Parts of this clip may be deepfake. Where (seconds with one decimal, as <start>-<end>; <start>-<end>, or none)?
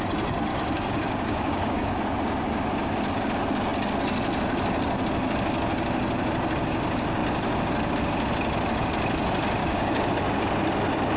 0.5-2.0; 9.6-10.1